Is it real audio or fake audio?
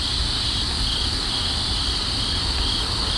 real